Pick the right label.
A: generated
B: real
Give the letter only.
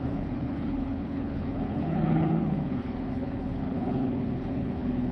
A